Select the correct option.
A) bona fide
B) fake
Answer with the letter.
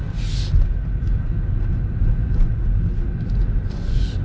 A